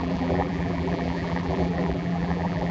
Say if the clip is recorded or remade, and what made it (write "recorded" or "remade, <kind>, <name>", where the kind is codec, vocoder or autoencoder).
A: remade, vocoder, BigVGAN v2